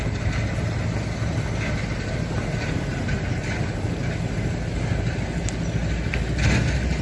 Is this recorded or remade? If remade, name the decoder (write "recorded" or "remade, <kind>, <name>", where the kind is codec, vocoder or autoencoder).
recorded